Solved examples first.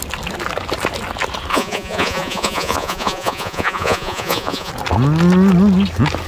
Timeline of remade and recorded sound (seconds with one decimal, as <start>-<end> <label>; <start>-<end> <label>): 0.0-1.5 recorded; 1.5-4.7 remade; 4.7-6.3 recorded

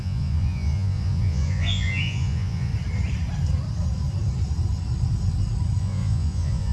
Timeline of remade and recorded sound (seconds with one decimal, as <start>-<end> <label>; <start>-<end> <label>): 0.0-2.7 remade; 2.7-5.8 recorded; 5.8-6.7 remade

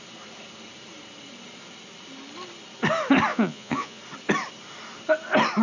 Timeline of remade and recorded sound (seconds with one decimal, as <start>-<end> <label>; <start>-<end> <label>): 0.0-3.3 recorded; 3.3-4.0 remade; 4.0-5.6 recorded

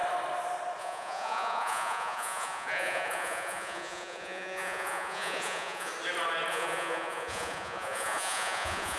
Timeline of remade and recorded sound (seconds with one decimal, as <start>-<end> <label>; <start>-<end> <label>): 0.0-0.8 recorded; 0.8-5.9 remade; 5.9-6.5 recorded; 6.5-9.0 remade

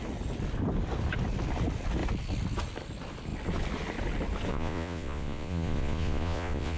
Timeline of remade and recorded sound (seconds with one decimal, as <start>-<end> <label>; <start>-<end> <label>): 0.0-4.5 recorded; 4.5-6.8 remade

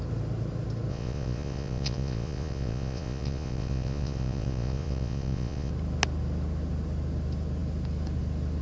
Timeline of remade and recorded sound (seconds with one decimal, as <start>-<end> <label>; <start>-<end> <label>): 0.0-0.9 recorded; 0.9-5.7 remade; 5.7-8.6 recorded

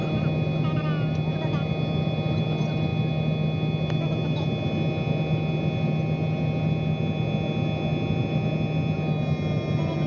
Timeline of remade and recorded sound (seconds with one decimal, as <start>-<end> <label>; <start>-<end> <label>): 0.0-10.1 recorded

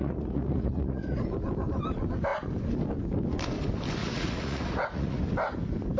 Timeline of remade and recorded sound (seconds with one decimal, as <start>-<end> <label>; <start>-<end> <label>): 0.0-1.2 remade; 1.2-4.0 recorded; 4.0-5.2 remade; 5.2-6.0 recorded